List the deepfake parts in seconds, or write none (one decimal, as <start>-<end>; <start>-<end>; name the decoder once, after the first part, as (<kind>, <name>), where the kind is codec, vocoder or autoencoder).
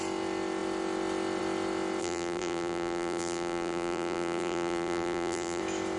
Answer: 2.0-5.6 (vocoder, BigVGAN v2)